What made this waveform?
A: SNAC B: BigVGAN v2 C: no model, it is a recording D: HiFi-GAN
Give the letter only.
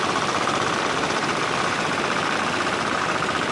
C